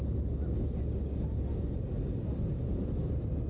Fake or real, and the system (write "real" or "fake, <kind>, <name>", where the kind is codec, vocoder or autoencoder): real